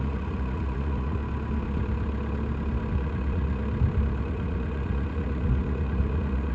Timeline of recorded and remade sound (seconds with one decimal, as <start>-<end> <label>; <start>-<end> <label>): 0.0-1.2 remade; 1.2-2.9 recorded; 2.9-3.6 remade; 3.6-4.2 recorded; 4.2-6.5 remade